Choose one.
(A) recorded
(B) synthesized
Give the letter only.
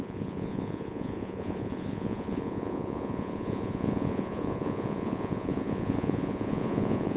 B